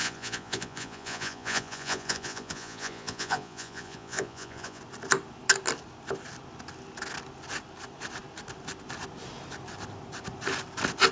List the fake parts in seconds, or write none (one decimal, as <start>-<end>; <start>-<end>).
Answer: 0.0-4.8